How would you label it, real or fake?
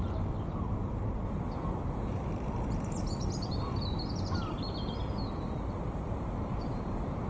real